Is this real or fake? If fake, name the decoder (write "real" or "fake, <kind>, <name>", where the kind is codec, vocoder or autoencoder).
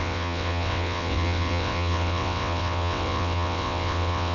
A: fake, vocoder, WaveNeXt